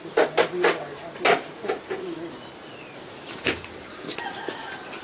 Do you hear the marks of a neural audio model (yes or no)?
no